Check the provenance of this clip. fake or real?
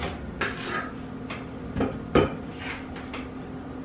real